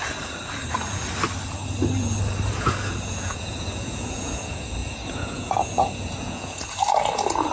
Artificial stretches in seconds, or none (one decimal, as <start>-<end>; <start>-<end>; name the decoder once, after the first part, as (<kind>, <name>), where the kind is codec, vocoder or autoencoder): 2.5-7.5 (vocoder, Vocos)